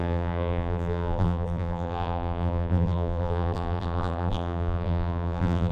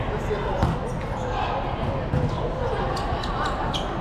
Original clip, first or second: second